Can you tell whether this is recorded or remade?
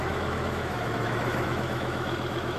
remade